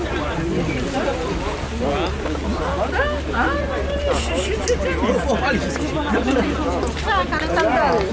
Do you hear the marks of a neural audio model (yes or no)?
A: no